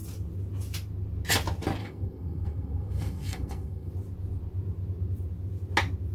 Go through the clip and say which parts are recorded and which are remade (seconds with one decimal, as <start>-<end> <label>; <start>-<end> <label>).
0.0-1.8 recorded; 1.8-3.9 remade; 3.9-6.1 recorded